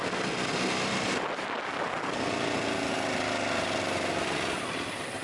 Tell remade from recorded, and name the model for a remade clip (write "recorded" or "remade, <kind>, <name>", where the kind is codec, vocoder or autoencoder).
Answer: recorded